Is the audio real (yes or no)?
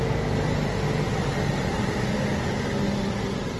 yes